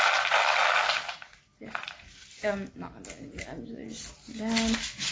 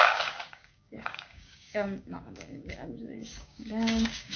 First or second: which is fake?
second